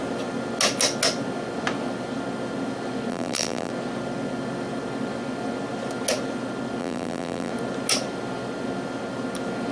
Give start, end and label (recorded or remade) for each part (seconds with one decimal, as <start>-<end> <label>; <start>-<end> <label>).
0.0-3.1 recorded; 3.1-3.7 remade; 3.7-6.8 recorded; 6.8-7.5 remade; 7.5-9.7 recorded